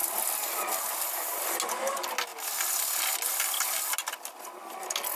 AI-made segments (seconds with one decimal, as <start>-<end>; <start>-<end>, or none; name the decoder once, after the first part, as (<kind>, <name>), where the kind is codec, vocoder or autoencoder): none